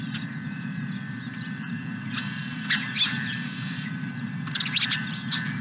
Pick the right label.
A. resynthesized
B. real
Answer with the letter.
B